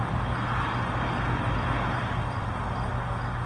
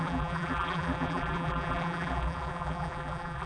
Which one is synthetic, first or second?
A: second